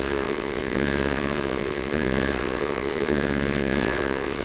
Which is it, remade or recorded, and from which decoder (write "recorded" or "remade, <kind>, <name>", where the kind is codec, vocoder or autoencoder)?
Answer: remade, vocoder, WaveNeXt